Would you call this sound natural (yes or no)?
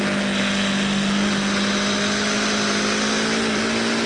yes